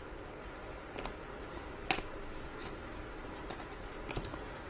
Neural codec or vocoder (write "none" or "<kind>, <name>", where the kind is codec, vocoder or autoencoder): none